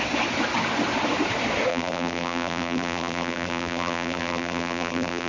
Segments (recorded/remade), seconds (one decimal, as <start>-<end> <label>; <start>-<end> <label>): 0.0-1.7 recorded; 1.7-5.3 remade